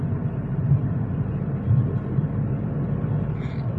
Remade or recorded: remade